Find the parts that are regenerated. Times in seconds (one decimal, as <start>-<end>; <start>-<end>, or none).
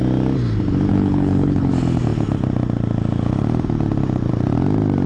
0.9-1.7